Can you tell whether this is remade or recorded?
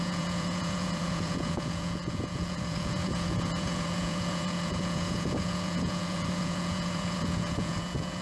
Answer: remade